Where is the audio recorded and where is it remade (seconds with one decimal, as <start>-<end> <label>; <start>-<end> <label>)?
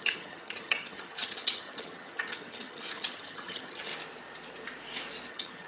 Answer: 0.0-3.9 remade; 3.9-5.3 recorded; 5.3-5.7 remade